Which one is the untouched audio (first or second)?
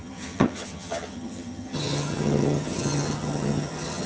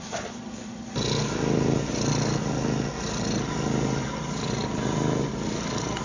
second